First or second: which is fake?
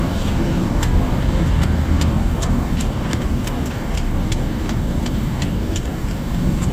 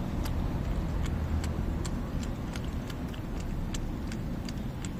first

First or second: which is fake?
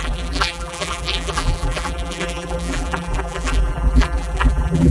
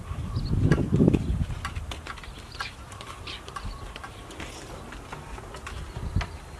first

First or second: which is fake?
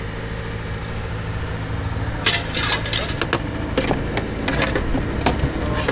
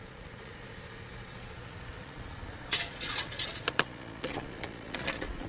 second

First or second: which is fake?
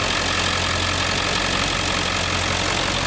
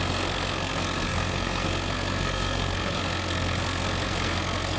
second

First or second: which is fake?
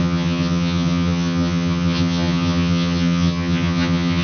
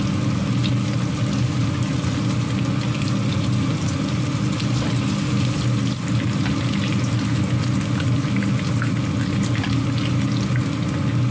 first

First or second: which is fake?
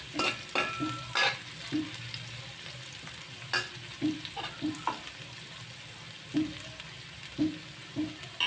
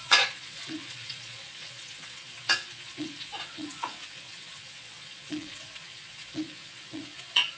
second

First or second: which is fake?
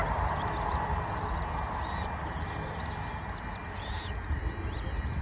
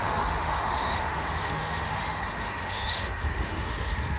second